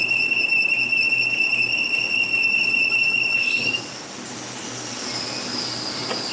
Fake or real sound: real